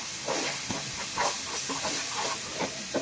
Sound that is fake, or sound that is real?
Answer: real